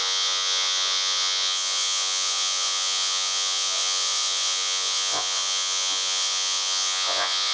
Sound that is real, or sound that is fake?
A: fake